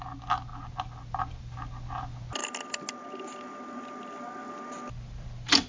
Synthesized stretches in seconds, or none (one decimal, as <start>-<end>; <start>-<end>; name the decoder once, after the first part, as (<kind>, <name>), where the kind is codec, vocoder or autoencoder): none